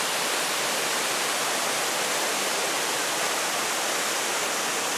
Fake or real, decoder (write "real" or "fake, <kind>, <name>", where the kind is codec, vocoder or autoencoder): real